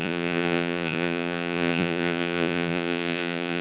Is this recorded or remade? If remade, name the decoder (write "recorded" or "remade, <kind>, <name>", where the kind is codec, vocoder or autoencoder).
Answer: remade, vocoder, Vocos